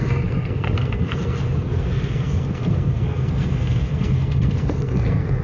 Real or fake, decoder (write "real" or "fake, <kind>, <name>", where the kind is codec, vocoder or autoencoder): fake, codec, SNAC